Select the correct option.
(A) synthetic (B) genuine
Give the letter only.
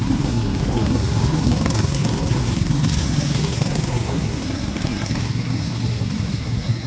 A